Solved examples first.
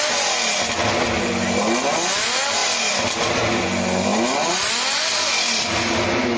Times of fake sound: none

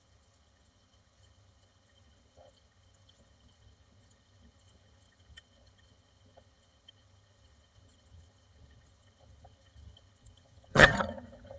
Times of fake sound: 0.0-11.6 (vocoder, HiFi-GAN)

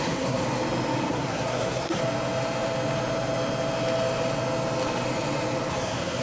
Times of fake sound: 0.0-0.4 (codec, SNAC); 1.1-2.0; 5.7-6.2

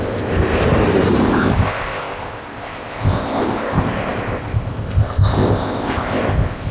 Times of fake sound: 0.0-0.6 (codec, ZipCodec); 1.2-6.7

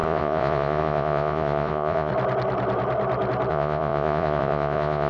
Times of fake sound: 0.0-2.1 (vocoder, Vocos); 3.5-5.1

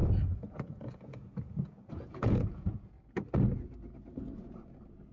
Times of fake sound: 0.0-3.1 (vocoder, Vocos)